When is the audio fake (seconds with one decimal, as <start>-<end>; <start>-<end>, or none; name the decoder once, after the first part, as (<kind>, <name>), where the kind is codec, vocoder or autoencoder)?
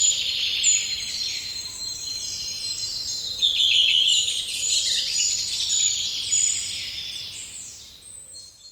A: 0.5-3.6 (vocoder, BigVGAN v2); 4.1-5.2